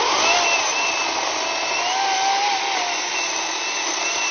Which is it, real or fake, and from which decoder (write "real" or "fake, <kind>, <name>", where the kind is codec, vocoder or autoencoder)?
real